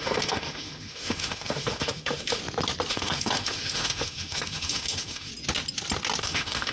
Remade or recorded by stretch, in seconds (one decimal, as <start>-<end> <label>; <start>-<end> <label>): 0.0-2.4 remade; 2.4-2.9 recorded; 2.9-5.3 remade; 5.3-6.2 recorded; 6.2-6.7 remade